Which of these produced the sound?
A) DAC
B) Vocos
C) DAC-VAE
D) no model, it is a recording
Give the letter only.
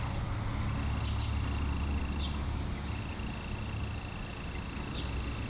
D